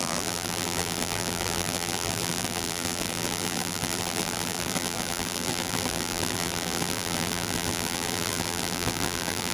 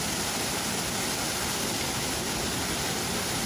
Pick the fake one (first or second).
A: first